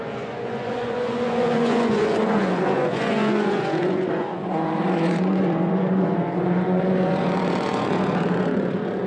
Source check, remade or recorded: remade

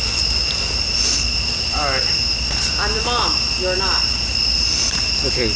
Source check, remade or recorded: recorded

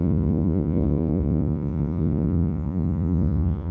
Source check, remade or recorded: remade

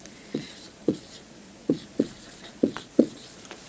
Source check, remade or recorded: remade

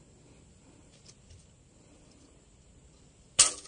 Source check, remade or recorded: recorded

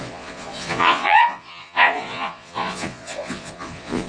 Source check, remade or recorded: remade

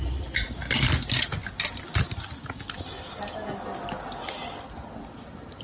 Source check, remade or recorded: recorded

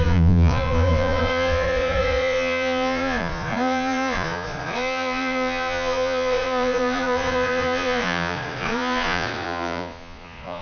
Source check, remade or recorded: remade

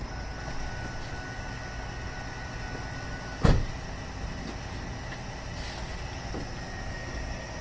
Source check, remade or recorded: recorded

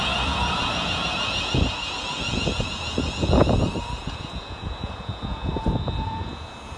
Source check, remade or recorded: remade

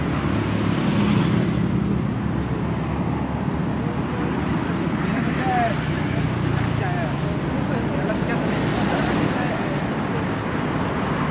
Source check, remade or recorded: recorded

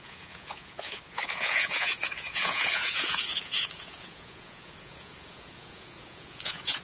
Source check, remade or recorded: remade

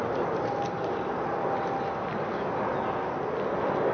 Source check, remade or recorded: recorded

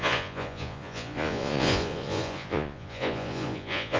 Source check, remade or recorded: remade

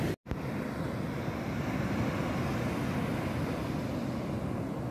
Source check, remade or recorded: recorded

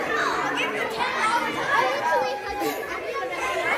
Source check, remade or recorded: recorded